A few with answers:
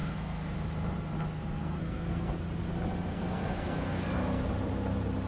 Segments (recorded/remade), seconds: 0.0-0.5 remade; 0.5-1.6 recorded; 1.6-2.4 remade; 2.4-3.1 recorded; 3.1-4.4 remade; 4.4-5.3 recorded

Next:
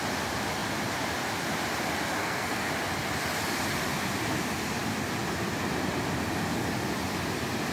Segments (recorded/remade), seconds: 0.0-2.2 recorded; 2.2-2.7 remade; 2.7-7.7 recorded

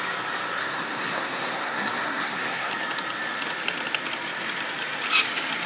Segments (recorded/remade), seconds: 0.0-0.6 recorded; 0.6-2.7 remade; 2.7-5.7 recorded

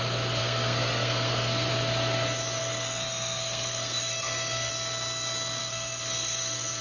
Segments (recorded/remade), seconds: 0.0-0.4 recorded; 0.4-1.7 remade; 1.7-2.6 recorded; 2.6-4.7 remade; 4.7-5.6 recorded; 5.6-6.8 remade

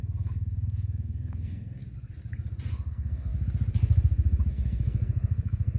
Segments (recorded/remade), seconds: 0.0-1.8 remade; 1.8-2.9 recorded; 2.9-3.3 remade; 3.3-4.5 recorded; 4.5-5.8 remade

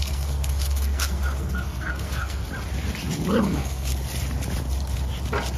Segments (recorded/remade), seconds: 0.0-2.4 remade; 2.4-3.4 recorded; 3.4-3.9 remade; 3.9-5.6 recorded

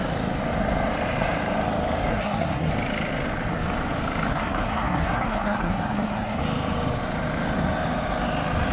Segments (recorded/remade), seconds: 0.0-2.1 recorded; 2.1-2.7 remade; 2.7-4.3 recorded; 4.3-6.4 remade; 6.4-8.7 recorded